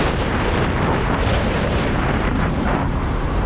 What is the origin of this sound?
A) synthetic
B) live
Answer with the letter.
A